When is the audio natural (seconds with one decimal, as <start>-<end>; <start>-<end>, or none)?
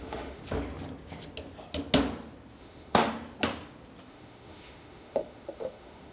0.4-2.6; 3.1-4.1